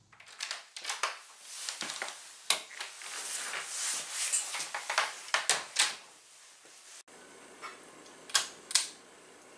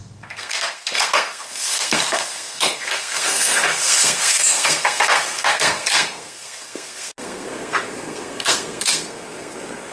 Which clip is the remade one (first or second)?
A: second